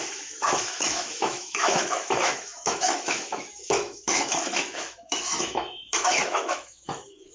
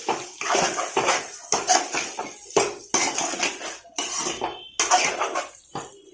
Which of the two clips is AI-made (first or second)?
first